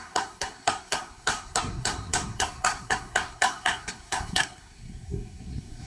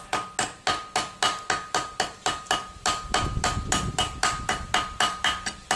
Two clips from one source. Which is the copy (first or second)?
first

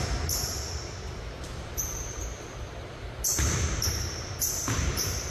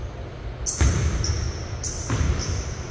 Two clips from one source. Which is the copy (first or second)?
first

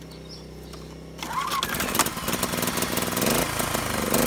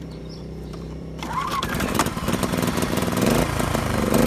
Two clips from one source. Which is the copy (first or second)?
second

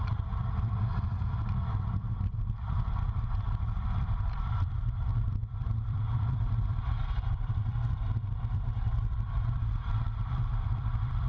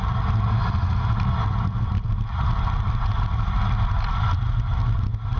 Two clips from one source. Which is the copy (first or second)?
first